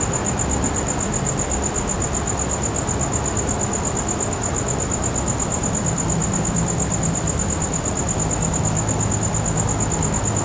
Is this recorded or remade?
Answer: recorded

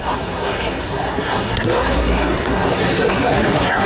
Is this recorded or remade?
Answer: remade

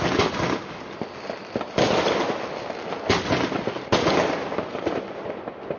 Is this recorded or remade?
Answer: recorded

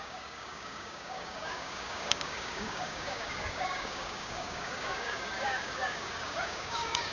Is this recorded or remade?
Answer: remade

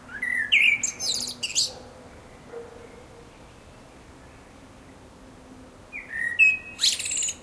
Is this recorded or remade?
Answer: recorded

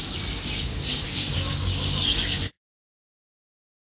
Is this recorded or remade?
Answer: remade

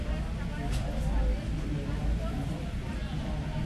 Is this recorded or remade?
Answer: recorded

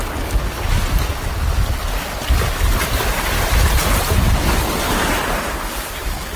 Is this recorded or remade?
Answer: recorded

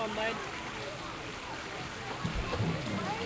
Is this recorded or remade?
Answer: recorded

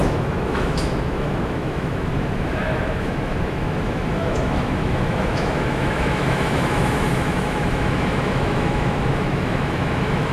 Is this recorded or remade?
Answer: remade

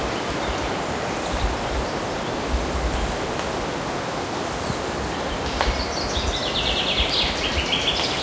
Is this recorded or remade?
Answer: recorded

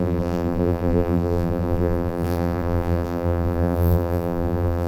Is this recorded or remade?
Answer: remade